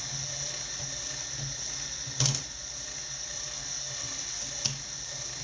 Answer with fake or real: real